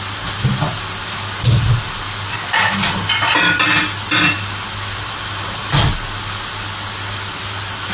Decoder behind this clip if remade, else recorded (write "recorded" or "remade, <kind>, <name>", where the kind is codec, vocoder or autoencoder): recorded